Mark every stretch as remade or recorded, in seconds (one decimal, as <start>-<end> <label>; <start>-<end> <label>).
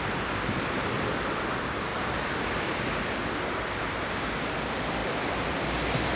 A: 0.0-6.2 recorded